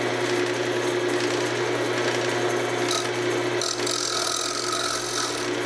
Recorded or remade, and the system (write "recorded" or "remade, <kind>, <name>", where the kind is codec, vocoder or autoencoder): recorded